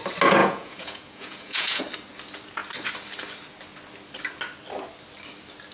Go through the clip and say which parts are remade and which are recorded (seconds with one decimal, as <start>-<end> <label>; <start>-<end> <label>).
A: 0.0-0.4 recorded; 0.4-1.8 remade; 1.8-5.7 recorded